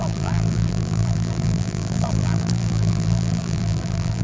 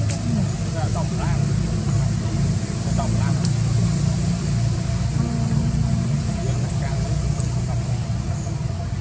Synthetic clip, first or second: first